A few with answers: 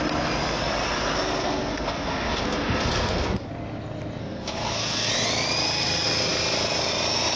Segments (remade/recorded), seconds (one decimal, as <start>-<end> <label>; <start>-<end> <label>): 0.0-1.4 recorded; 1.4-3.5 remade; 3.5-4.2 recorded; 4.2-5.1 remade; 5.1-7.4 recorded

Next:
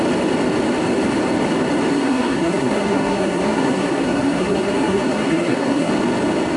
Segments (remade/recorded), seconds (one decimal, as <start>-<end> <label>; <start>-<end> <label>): 0.0-1.9 recorded; 1.9-5.9 remade; 5.9-6.6 recorded

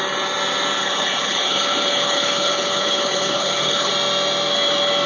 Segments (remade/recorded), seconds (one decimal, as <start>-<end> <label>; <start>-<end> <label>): 0.0-0.8 recorded; 0.8-3.9 remade; 3.9-5.1 recorded

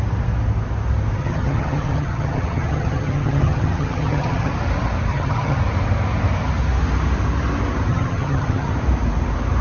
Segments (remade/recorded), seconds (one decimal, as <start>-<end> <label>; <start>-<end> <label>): 0.0-1.2 recorded; 1.2-4.5 remade; 4.5-5.1 recorded; 5.1-5.6 remade; 5.6-7.9 recorded; 7.9-8.7 remade; 8.7-9.6 recorded

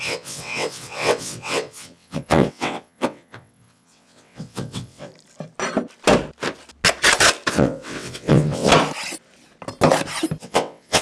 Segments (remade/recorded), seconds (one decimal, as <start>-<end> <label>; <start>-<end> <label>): 0.0-5.1 remade; 5.1-7.5 recorded; 7.5-8.7 remade; 8.7-10.4 recorded; 10.4-11.0 remade

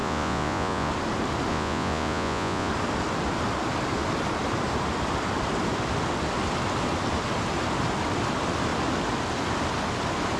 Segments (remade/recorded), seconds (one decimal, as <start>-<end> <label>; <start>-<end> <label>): 0.0-0.9 remade; 0.9-1.5 recorded; 1.5-2.7 remade; 2.7-10.4 recorded

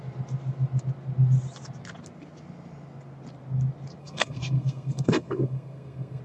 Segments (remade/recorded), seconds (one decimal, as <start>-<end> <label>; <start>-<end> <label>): 0.0-4.0 recorded; 4.0-6.2 remade